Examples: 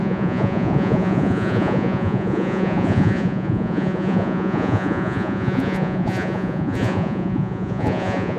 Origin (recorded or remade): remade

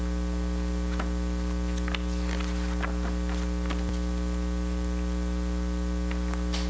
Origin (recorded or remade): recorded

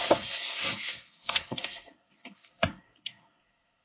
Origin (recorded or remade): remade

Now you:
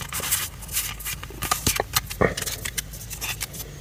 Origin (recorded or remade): recorded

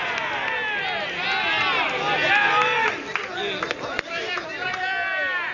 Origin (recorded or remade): recorded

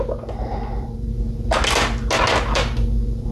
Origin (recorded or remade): recorded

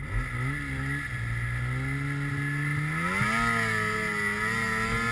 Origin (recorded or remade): recorded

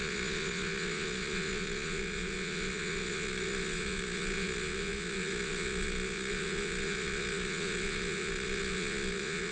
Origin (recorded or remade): remade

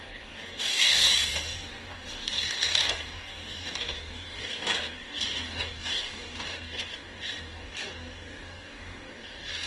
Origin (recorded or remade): remade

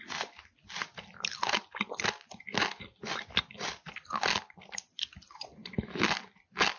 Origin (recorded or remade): recorded